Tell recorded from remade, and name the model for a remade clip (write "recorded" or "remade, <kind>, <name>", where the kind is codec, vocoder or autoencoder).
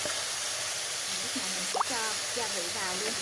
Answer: recorded